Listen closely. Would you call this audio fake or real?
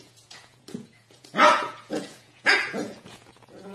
fake